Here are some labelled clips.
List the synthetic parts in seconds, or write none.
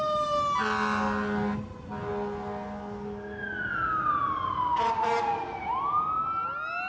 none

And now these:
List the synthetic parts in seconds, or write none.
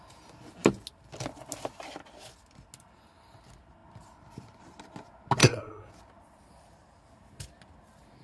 5.4-5.9 (codec, SNAC)